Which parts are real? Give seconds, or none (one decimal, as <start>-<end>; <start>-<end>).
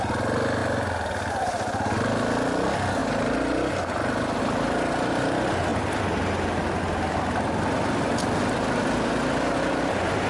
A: 0.0-10.3